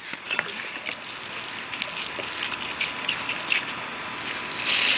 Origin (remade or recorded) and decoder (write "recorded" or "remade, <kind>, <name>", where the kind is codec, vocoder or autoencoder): recorded